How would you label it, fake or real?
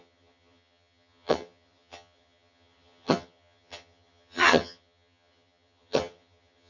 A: fake